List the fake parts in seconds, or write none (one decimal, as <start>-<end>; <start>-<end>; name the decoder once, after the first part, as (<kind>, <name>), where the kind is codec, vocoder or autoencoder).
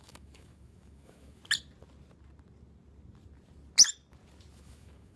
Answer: 0.0-1.4 (autoencoder, DAC-VAE); 4.5-5.2